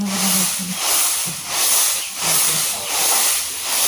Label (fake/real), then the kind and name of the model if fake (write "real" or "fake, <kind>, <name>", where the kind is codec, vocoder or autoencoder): real